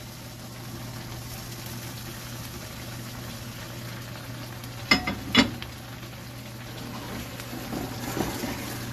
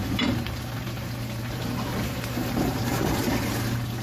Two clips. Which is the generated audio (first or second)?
second